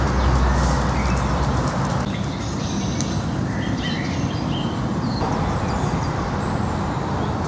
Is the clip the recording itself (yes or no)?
yes